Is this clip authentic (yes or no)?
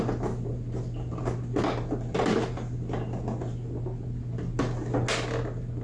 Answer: yes